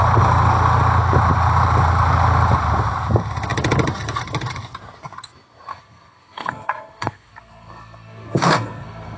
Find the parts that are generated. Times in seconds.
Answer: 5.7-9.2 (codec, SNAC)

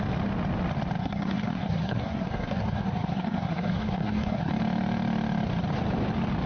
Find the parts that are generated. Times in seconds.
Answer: 1.0-4.5 (codec, SNAC)

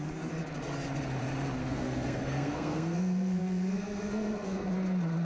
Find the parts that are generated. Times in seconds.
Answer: 1.6-4.7 (codec, SNAC)

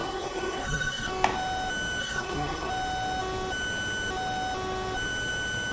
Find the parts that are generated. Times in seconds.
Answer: 0.0-1.1 (codec, SNAC); 2.0-2.7